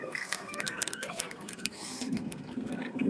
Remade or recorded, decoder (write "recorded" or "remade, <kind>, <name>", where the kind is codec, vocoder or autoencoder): remade, codec, SNAC